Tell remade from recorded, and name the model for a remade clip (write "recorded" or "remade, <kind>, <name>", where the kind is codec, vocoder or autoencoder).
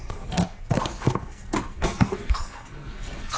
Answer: remade, codec, SNAC